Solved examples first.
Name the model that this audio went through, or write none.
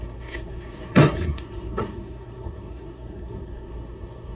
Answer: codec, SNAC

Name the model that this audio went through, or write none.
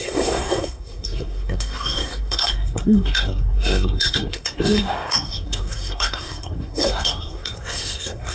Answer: codec, SNAC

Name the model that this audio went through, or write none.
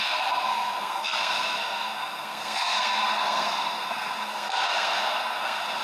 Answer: codec, SNAC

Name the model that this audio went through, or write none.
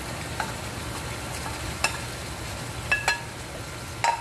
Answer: none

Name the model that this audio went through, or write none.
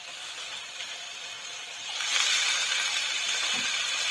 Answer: none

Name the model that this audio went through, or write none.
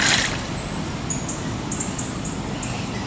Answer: none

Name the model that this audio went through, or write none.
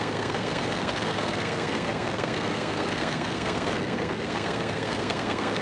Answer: codec, SNAC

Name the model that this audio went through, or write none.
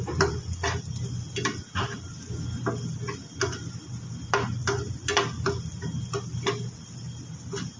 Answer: none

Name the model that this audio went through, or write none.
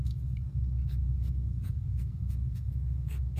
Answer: codec, SNAC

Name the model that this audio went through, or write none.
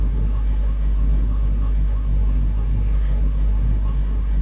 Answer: codec, SNAC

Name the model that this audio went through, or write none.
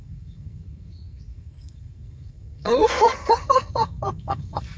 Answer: codec, SNAC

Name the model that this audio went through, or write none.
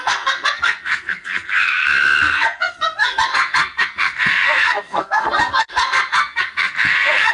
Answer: codec, SNAC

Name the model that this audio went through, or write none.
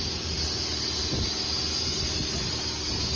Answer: none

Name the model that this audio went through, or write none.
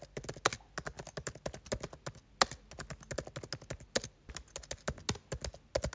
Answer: none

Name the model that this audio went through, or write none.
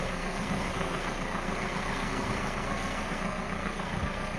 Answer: codec, SNAC